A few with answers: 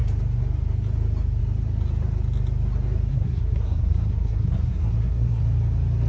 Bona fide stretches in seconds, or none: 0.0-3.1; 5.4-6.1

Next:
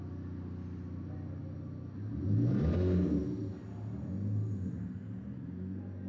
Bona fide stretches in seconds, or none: 0.0-6.1

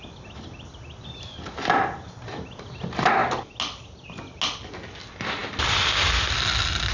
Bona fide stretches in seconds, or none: 0.0-6.9

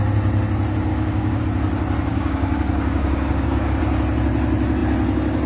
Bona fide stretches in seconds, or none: 0.0-0.9; 1.4-2.1; 3.8-5.5

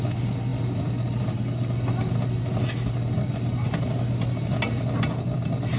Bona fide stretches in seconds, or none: 0.0-5.8

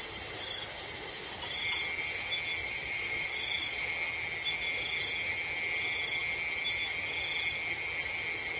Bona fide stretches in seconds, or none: 0.0-2.6; 3.9-8.6

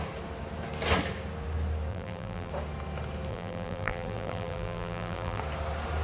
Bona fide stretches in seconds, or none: 0.0-1.9; 2.5-3.3; 5.4-6.0

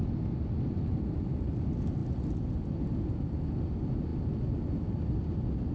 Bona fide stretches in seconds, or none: 0.0-5.7